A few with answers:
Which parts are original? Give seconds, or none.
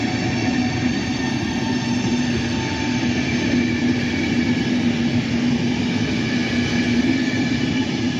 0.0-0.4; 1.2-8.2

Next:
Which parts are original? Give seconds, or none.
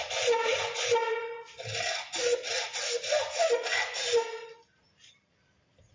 0.0-5.9